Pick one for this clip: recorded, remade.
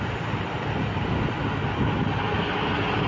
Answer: recorded